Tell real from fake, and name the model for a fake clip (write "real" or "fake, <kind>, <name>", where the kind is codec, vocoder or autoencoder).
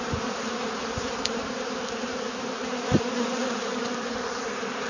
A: fake, vocoder, BigVGAN v2